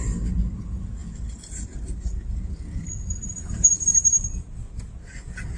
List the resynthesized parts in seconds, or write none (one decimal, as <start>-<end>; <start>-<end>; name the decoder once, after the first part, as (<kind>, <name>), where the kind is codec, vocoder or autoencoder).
none